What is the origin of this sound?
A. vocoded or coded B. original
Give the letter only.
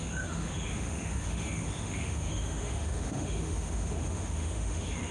A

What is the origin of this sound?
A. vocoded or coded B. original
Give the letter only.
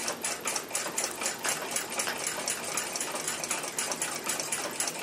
B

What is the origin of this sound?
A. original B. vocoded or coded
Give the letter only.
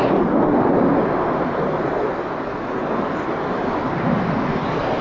A